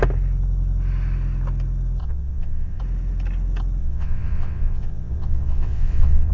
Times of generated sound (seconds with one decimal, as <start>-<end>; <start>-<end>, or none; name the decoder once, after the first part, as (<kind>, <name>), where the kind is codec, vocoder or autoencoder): 2.0-2.8 (vocoder, WaveNeXt); 3.8-6.3